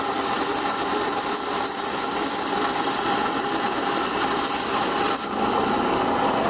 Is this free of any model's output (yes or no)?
yes